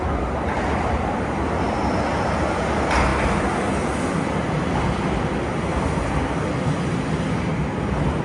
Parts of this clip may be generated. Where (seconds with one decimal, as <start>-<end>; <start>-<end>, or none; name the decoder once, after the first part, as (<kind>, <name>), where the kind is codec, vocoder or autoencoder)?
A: none